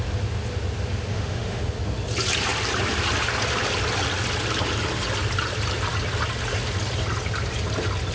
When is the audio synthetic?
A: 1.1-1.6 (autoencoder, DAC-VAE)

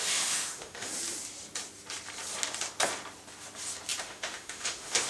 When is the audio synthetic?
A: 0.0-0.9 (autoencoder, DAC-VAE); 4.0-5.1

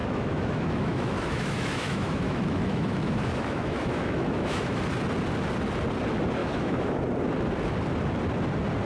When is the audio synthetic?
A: 0.0-4.8 (autoencoder, DAC-VAE); 6.4-7.0

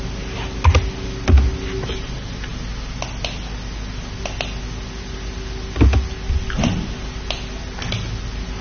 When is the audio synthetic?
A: none

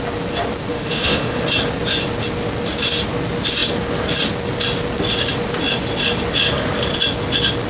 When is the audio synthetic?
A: 0.7-1.4 (autoencoder, DAC-VAE)

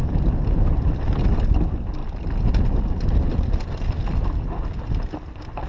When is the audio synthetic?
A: none

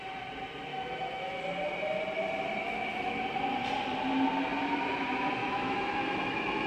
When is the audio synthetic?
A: 0.7-1.4 (autoencoder, DAC-VAE); 2.6-3.2; 5.4-6.7

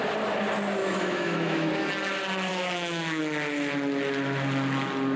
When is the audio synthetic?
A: 0.8-1.7 (autoencoder, DAC-VAE); 2.5-3.2